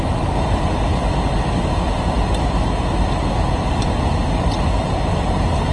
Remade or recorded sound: recorded